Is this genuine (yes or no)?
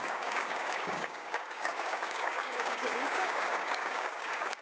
no